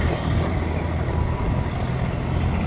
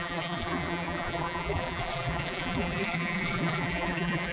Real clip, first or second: first